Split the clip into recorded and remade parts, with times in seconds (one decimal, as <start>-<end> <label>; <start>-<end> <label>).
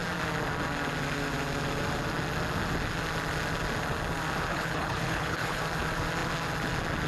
0.0-4.5 recorded; 4.5-5.6 remade; 5.6-7.1 recorded